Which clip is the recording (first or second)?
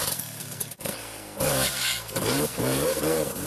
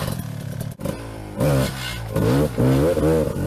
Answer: second